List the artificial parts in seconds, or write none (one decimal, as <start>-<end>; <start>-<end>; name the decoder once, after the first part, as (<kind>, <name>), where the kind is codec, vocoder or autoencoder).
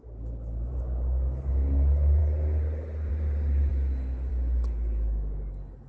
none